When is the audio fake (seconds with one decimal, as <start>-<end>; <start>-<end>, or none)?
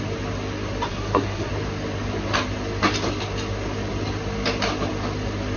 0.9-1.5